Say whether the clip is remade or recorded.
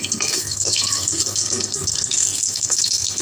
remade